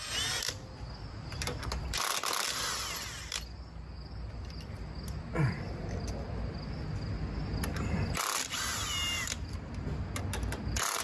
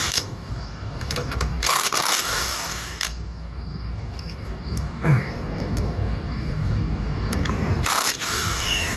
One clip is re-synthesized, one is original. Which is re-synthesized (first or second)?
second